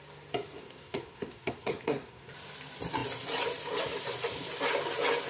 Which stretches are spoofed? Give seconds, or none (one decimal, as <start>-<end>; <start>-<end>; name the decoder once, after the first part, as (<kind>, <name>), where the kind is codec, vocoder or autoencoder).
0.6-2.3 (codec, SNAC)